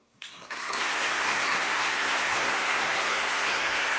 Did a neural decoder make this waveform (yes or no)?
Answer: yes